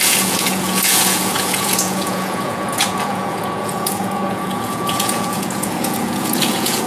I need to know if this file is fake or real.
fake